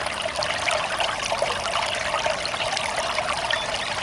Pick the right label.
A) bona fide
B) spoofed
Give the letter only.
A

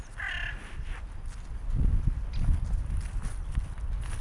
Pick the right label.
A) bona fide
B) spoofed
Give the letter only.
A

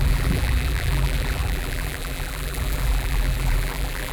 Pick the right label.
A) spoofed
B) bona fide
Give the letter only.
A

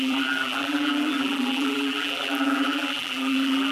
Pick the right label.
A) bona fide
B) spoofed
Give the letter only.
B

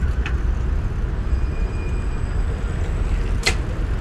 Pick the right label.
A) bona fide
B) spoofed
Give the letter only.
A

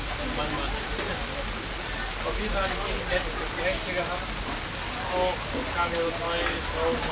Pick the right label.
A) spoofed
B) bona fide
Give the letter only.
B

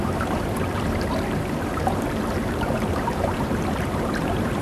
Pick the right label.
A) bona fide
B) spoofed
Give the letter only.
B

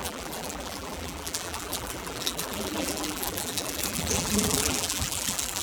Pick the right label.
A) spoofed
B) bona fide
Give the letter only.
A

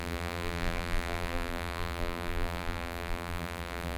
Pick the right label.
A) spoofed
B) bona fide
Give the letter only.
A